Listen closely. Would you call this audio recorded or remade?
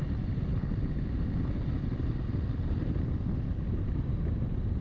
recorded